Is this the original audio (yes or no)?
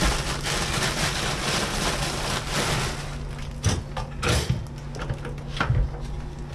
yes